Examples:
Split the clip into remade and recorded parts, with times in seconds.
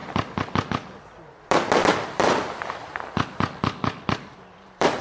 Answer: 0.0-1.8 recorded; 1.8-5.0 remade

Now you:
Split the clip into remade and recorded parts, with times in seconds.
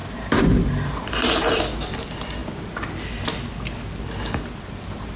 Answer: 0.0-1.6 remade; 1.6-5.2 recorded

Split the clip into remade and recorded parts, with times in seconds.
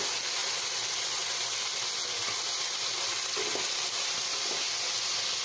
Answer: 0.0-0.4 recorded; 0.4-1.0 remade; 1.0-2.2 recorded; 2.2-4.4 remade; 4.4-5.4 recorded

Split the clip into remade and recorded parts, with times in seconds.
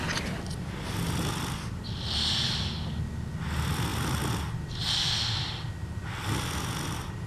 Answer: 0.0-7.3 recorded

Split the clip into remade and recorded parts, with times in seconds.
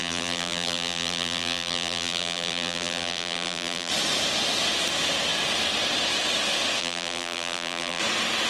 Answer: 0.0-3.9 remade; 3.9-6.8 recorded; 6.8-8.0 remade; 8.0-8.5 recorded